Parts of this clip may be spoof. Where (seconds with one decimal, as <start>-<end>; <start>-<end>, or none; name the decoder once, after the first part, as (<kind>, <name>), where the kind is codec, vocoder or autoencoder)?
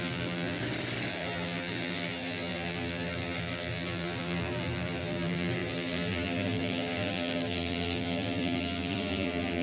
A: 0.0-0.6 (vocoder, BigVGAN v2); 1.1-9.6